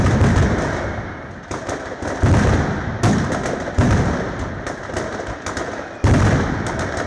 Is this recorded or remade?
recorded